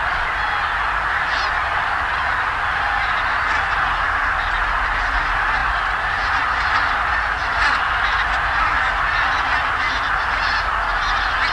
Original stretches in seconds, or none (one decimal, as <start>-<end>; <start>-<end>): 0.0-11.5

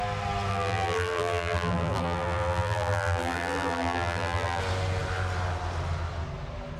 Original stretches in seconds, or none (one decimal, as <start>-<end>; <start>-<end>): 0.0-0.5; 4.6-6.8

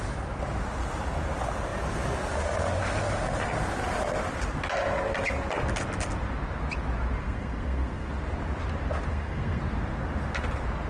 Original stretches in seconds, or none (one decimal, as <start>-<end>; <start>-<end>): 0.0-7.2; 8.1-9.1; 9.6-10.9

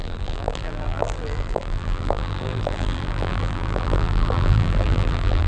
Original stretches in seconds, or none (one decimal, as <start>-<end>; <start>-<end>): none

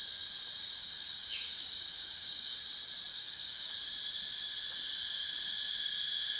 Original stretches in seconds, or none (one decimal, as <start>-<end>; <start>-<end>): 0.0-0.8; 2.6-3.1; 3.7-6.4

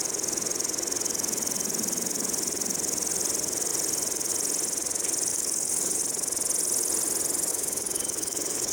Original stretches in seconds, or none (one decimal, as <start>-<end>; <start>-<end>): 0.0-5.3; 6.0-7.5

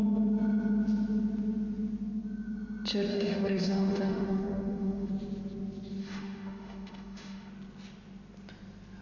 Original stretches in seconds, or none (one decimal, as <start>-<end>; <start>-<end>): 0.0-3.1; 5.1-6.0; 7.5-9.0